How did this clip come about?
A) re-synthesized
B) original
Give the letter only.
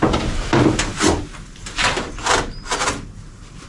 B